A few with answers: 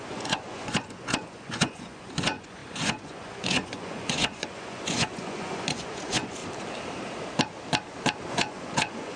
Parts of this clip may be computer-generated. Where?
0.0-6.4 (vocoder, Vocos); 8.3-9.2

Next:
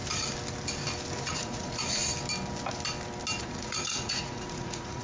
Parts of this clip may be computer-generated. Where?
1.2-2.0 (vocoder, Vocos); 3.4-5.0

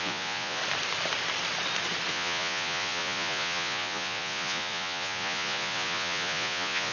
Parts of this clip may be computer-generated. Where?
0.0-0.6 (vocoder, Vocos); 2.1-6.9

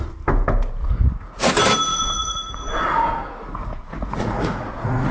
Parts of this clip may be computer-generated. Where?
0.8-1.5 (vocoder, Vocos); 1.9-5.1

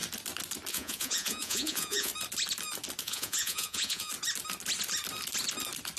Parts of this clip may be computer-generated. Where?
0.7-2.1 (vocoder, Vocos); 3.0-4.1

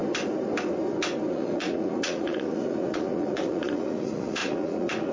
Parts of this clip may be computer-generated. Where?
1.3-5.1 (vocoder, Vocos)

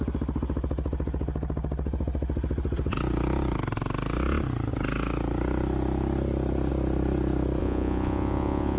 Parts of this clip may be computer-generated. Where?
7.6-8.8 (vocoder, Vocos)

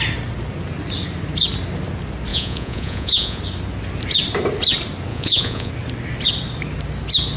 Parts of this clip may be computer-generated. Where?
2.3-3.4 (vocoder, Vocos); 5.1-5.7